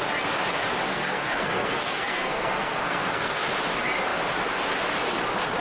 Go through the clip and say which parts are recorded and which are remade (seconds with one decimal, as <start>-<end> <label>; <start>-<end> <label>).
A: 0.0-0.9 recorded; 0.9-3.4 remade; 3.4-5.6 recorded